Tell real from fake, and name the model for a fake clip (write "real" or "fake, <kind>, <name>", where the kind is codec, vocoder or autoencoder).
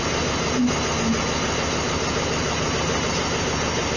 real